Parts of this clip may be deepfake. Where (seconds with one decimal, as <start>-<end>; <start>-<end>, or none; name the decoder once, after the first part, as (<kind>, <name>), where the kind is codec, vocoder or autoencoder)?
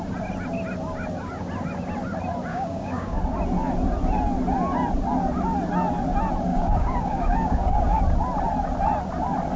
2.5-3.2 (codec, DAC); 6.5-8.0